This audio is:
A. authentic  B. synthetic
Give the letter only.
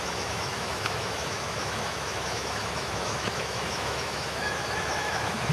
B